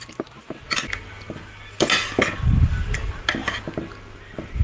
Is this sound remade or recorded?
recorded